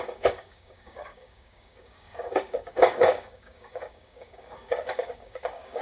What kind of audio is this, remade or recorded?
remade